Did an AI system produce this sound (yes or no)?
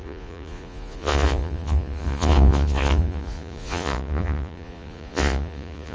yes